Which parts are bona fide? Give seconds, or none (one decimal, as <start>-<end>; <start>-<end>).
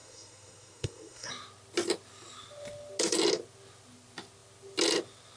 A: 1.3-5.4